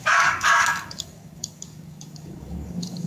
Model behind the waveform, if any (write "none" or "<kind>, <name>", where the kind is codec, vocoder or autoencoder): codec, DAC